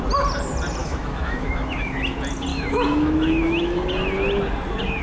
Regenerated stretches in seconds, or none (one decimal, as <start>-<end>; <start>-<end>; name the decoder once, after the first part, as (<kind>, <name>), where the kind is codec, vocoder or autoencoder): 0.8-1.9 (autoencoder, DAC-VAE); 2.5-3.8